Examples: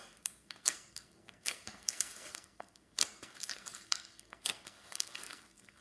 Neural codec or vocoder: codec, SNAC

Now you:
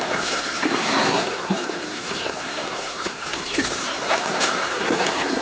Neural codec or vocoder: codec, SNAC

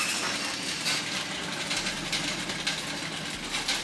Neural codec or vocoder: none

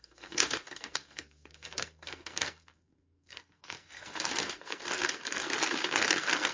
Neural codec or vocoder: codec, SNAC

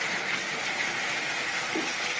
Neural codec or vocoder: none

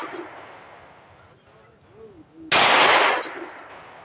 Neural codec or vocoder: none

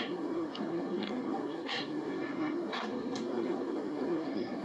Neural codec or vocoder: codec, SNAC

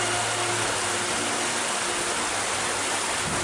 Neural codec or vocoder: none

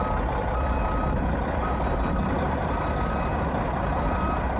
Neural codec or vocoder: none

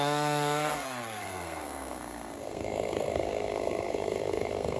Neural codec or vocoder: codec, SNAC